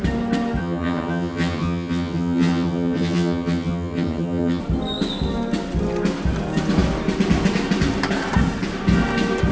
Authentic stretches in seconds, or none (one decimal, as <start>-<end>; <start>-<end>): 0.0-0.6; 4.6-9.5